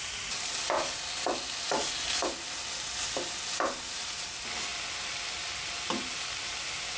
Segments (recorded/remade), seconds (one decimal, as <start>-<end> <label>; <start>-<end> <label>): 0.0-7.0 recorded